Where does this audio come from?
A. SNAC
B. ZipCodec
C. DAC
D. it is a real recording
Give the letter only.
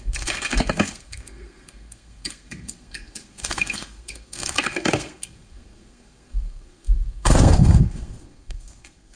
A